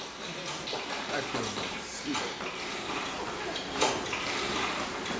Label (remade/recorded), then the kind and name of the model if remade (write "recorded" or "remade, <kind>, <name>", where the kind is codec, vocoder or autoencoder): remade, vocoder, BigVGAN v2